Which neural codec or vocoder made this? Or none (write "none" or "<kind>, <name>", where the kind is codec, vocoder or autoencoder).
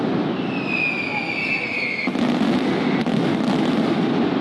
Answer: none